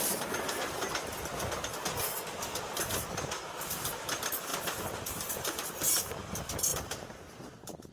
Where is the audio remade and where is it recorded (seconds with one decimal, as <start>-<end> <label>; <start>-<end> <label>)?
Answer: 0.0-4.5 recorded; 4.5-5.6 remade; 5.6-6.7 recorded; 6.7-7.9 remade